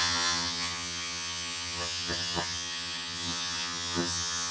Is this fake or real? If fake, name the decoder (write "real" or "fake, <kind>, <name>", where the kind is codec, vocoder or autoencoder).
fake, vocoder, HiFi-GAN